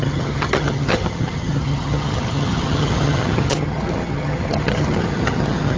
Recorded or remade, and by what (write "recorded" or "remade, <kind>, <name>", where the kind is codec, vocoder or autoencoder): remade, vocoder, HiFi-GAN